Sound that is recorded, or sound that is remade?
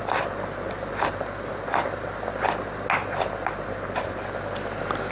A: recorded